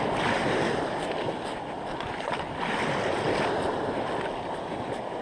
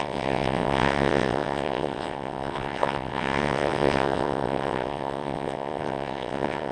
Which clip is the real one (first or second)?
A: first